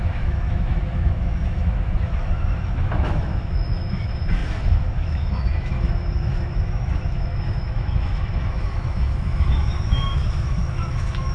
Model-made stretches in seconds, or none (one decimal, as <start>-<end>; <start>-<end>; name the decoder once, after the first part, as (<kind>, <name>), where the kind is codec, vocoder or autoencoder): 0.0-11.3 (autoencoder, DAC-VAE)